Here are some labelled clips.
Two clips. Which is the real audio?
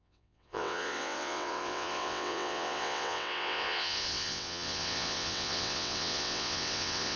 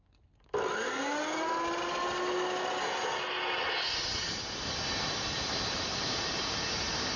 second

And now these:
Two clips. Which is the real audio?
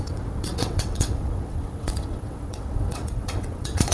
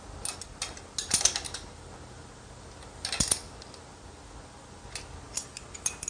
second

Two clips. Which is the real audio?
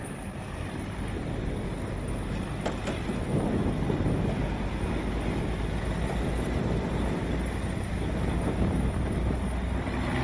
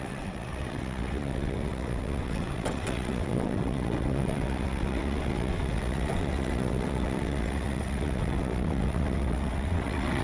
first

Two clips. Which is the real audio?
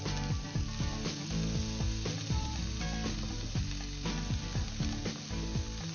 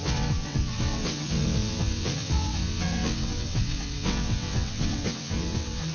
first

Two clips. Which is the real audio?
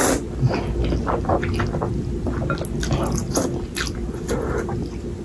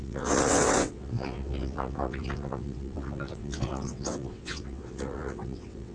first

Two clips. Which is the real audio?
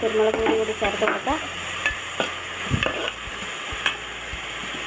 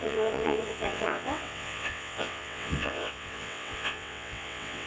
first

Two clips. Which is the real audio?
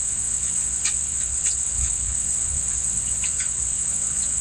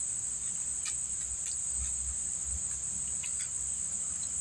second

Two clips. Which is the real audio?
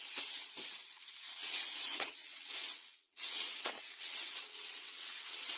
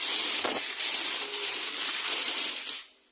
second